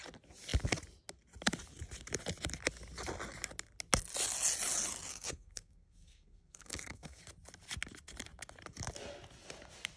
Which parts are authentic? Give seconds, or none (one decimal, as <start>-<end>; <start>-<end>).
0.0-5.1; 7.2-10.0